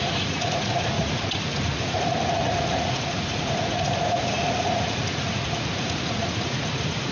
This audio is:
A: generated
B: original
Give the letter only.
A